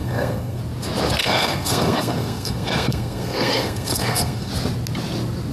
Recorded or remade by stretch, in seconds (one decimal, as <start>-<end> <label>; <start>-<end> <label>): 0.0-0.6 remade; 0.6-1.2 recorded; 1.2-4.5 remade; 4.5-5.5 recorded